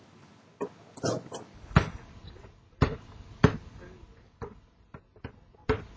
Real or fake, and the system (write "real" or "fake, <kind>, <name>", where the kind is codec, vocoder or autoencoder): real